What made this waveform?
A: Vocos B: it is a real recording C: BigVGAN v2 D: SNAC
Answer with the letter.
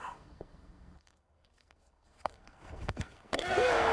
D